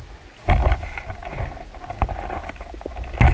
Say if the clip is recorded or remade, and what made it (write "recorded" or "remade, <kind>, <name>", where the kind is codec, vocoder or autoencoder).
recorded